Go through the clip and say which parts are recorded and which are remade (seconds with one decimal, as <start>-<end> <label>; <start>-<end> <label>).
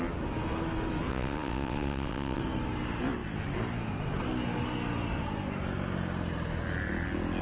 0.0-1.1 recorded; 1.1-2.4 remade; 2.4-7.4 recorded